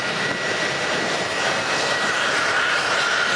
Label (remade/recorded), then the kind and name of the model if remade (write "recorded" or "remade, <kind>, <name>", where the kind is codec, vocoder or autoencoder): remade, vocoder, BigVGAN v2